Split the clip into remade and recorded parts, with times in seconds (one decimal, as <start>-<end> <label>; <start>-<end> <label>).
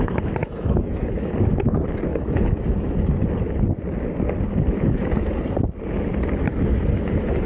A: 0.0-0.4 recorded; 0.4-1.3 remade; 1.3-2.1 recorded; 2.1-2.6 remade; 2.6-7.5 recorded